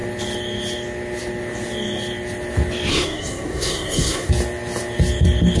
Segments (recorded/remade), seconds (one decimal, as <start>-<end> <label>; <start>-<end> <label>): 0.0-2.9 recorded; 2.9-4.3 remade; 4.3-5.6 recorded